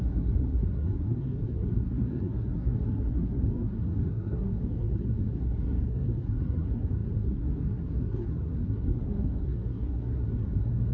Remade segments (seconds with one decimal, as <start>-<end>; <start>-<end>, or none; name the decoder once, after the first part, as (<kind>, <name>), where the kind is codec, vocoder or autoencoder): 0.0-10.9 (codec, SNAC)